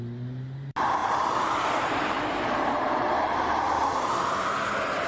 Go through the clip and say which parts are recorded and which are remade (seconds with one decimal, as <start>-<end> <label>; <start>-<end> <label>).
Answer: 0.0-1.0 recorded; 1.0-4.1 remade; 4.1-5.1 recorded

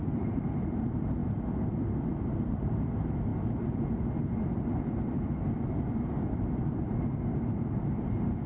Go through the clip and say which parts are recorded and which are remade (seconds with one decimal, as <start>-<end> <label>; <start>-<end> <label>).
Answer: 0.0-1.2 remade; 1.2-2.3 recorded; 2.3-3.3 remade; 3.3-7.4 recorded; 7.4-8.5 remade

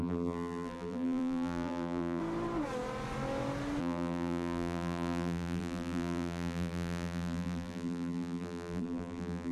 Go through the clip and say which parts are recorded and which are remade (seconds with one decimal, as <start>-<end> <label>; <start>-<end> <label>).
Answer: 0.0-2.2 remade; 2.2-3.8 recorded; 3.8-9.5 remade

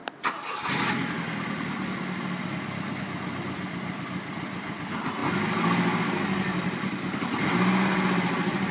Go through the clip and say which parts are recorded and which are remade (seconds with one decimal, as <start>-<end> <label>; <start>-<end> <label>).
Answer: 0.0-8.7 recorded